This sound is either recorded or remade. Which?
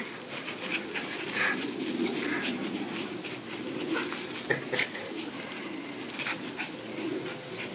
recorded